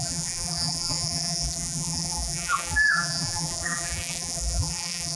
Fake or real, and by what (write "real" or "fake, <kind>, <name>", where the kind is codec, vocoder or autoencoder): fake, vocoder, BigVGAN v2